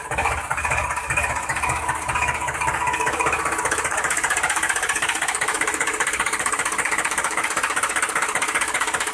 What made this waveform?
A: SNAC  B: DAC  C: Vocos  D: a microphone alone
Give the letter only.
B